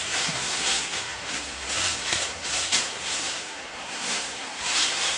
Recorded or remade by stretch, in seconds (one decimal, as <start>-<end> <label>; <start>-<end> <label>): 0.0-5.2 remade